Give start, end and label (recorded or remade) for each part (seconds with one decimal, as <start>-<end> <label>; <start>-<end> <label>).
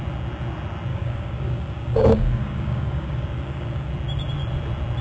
0.0-0.9 recorded; 0.9-3.9 remade; 3.9-5.0 recorded